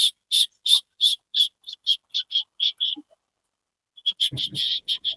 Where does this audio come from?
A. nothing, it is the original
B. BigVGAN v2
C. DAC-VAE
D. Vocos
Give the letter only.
A